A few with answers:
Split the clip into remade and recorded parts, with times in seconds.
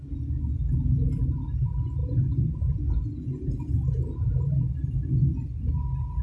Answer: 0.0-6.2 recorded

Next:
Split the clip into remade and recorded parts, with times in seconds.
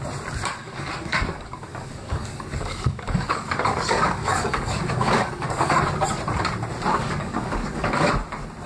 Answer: 0.0-0.6 recorded; 0.6-5.8 remade; 5.8-6.9 recorded; 6.9-8.1 remade; 8.1-8.7 recorded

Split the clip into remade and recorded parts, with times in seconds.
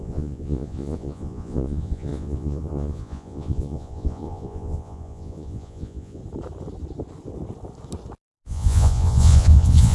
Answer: 0.0-6.2 remade; 6.2-8.2 recorded; 8.2-9.9 remade